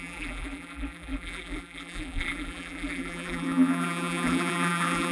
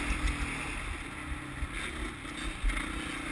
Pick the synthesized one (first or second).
first